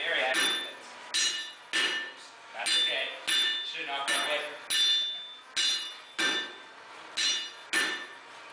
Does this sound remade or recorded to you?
recorded